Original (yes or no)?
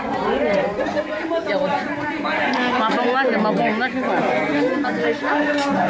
yes